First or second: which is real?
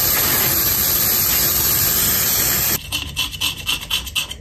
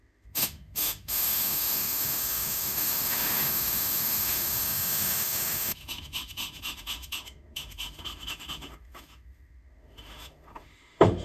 first